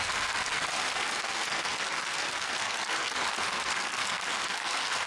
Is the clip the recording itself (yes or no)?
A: no